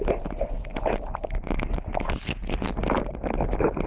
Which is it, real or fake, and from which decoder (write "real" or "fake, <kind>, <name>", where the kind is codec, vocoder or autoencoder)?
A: real